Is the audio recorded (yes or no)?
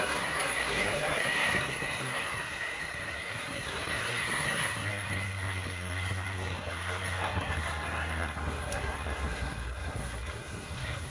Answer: no